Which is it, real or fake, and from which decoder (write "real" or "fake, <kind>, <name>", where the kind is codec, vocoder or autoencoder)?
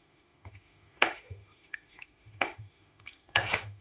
fake, autoencoder, DAC-VAE